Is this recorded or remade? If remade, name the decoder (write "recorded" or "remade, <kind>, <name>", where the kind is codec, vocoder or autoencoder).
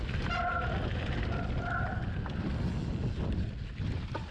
recorded